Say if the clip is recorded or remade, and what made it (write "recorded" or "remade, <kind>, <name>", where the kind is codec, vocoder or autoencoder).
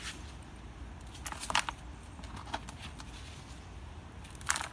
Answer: recorded